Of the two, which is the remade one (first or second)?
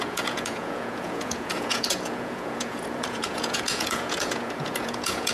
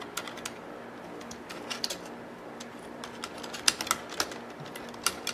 first